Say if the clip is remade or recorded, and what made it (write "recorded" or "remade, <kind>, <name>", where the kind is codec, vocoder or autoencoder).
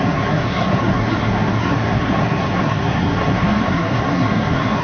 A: remade, codec, SNAC